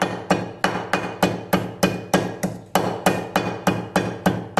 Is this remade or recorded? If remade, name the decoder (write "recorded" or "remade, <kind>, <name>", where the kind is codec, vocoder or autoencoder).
recorded